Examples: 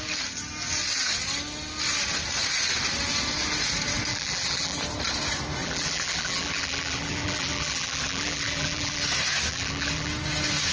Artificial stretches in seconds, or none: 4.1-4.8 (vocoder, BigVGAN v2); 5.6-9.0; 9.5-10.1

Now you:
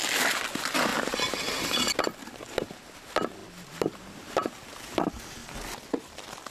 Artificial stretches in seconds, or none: 0.9-1.7 (vocoder, BigVGAN v2)

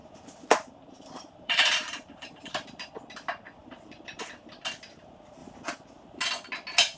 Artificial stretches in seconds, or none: 0.0-2.9 (vocoder, BigVGAN v2); 3.6-4.2; 5.4-6.2

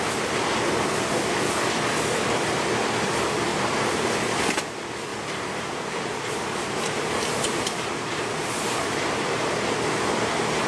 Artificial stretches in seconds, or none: 3.5-4.6 (vocoder, BigVGAN v2); 5.1-9.7

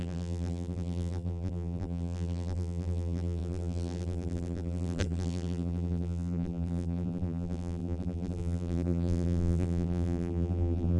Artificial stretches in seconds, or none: 0.0-11.0 (vocoder, BigVGAN v2)